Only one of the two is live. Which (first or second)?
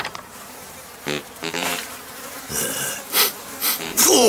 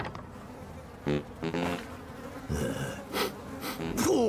second